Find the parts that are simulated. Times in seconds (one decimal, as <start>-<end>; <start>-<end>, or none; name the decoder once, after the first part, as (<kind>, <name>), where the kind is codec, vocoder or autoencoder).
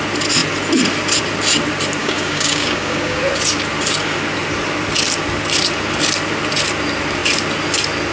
2.0-3.2 (codec, DAC)